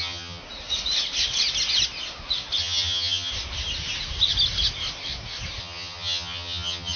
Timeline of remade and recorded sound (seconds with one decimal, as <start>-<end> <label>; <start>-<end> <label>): 0.0-0.4 remade; 0.4-2.6 recorded; 2.6-3.3 remade; 3.3-5.6 recorded; 5.6-7.0 remade